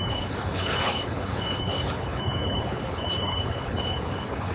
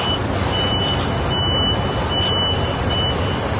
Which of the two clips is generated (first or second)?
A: first